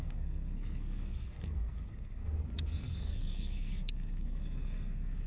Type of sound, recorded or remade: remade